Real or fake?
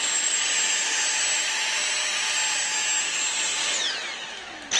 real